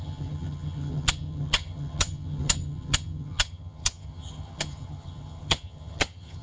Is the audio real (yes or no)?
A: no